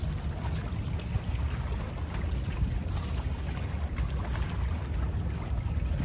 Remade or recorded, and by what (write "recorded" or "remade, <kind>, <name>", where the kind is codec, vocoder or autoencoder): recorded